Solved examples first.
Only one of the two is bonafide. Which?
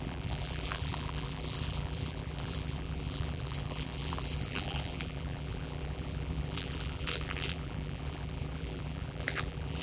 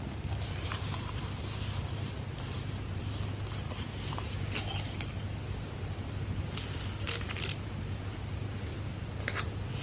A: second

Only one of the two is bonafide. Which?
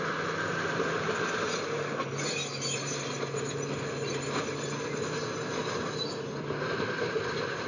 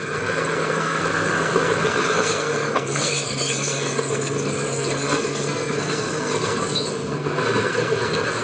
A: first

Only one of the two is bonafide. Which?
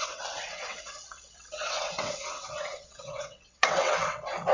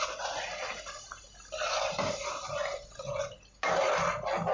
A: second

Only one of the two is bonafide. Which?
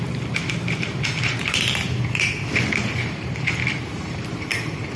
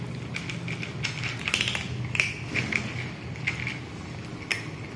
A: second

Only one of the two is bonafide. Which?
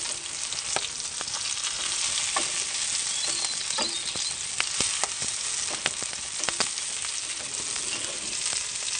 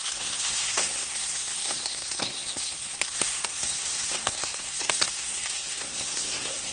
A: first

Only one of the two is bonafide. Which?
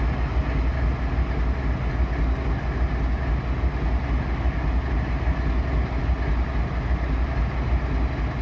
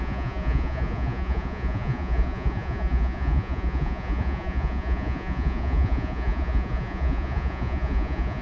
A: first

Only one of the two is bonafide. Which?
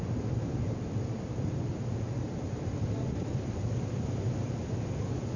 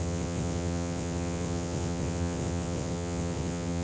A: first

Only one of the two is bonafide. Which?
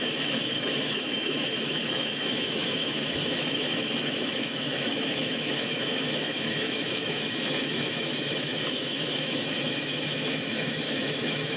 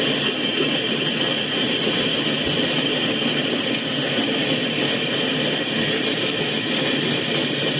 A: second